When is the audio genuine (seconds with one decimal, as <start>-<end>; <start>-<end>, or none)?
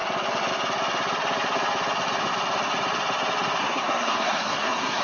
0.0-3.6